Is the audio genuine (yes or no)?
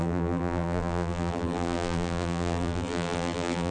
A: no